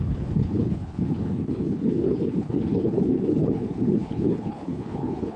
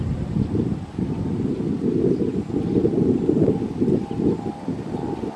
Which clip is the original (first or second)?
second